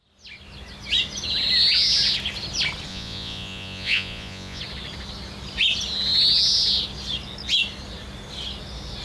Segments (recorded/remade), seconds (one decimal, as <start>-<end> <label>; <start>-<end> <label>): 0.0-2.9 recorded; 2.9-4.6 remade; 4.6-9.0 recorded